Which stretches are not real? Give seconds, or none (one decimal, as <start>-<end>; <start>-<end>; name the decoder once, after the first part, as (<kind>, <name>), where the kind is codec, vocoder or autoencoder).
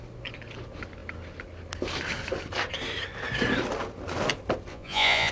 4.7-5.3 (vocoder, Vocos)